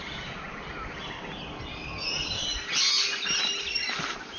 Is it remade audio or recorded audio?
recorded